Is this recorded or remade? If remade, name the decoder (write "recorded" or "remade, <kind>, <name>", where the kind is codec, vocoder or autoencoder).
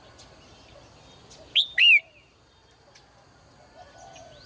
recorded